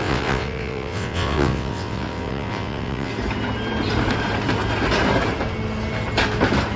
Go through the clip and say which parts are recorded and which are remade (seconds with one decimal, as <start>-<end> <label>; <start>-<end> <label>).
0.0-3.1 remade; 3.1-6.8 recorded